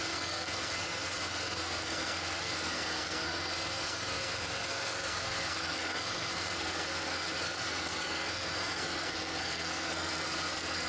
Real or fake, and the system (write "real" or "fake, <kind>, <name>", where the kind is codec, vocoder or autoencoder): fake, codec, SNAC